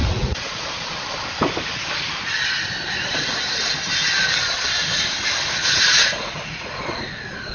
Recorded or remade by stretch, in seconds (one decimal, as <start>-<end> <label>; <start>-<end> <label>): 0.0-0.6 remade; 0.6-5.6 recorded; 5.6-6.8 remade; 6.8-7.5 recorded